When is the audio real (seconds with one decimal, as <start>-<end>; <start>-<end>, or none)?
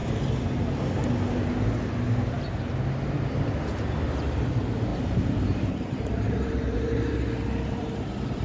0.0-4.1